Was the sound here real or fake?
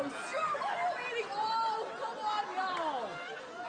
real